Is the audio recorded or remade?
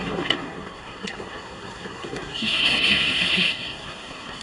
remade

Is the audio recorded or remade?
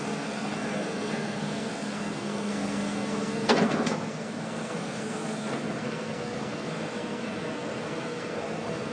remade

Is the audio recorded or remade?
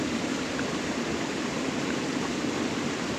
remade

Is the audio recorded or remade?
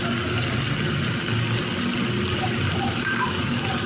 recorded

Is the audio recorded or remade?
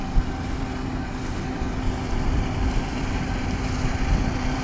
remade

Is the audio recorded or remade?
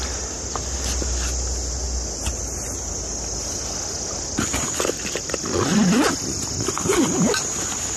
recorded